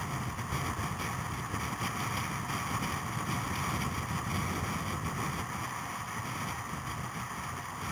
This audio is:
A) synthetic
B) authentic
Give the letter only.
B